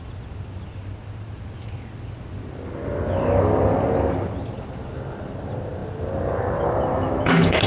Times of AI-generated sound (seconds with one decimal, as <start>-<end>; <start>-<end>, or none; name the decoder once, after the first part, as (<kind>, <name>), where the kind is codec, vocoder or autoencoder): 6.9-7.7 (autoencoder, DAC-VAE)